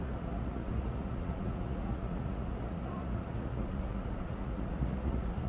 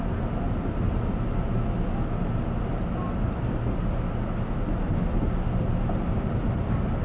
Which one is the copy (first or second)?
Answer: first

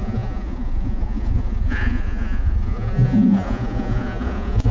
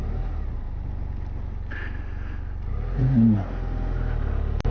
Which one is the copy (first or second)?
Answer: first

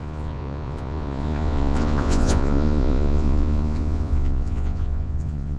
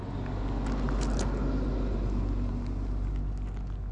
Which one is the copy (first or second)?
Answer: first